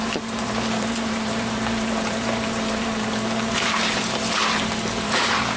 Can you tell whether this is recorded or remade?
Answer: remade